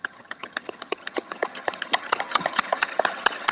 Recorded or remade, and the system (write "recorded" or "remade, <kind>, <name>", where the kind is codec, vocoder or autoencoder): remade, vocoder, HiFi-GAN